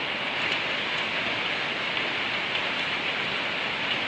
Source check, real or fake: real